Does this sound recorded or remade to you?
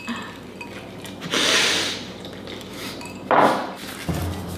recorded